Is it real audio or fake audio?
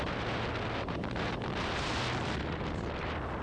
real